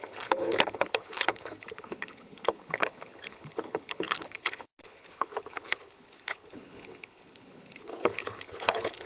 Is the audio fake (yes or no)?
yes